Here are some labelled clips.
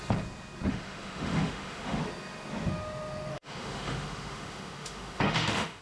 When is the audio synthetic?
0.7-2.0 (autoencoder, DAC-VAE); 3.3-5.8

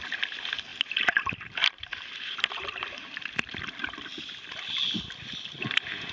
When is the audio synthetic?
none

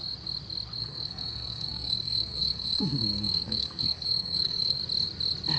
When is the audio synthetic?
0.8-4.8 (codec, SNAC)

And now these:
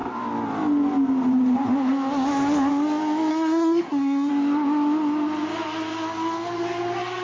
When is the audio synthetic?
3.3-4.3 (codec, SNAC)

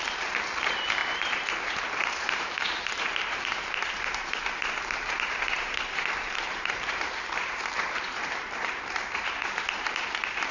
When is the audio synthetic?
0.0-10.5 (vocoder, BigVGAN v2)

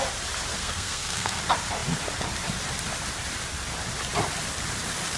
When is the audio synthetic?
0.6-1.4 (codec, SNAC)

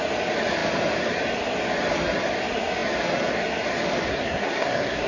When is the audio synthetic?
4.1-5.1 (codec, SNAC)